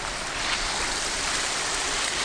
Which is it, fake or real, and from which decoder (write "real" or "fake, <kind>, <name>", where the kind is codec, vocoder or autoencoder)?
real